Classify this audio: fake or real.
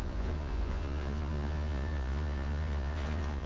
fake